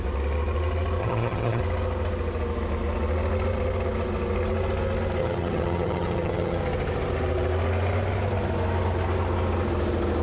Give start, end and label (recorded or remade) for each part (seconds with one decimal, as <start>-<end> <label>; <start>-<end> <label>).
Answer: 0.0-1.0 recorded; 1.0-1.6 remade; 1.6-5.2 recorded; 5.2-6.6 remade; 6.6-10.2 recorded